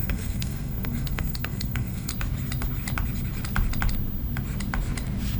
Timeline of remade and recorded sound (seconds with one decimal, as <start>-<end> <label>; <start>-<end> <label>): 0.0-2.1 remade; 2.1-5.4 recorded